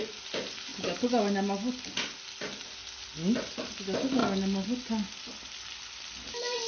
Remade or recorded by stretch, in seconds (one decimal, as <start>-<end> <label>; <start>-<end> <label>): 0.0-6.7 recorded